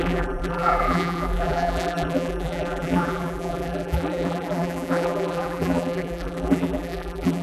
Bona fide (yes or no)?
no